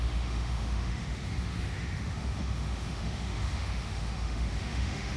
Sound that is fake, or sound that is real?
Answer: fake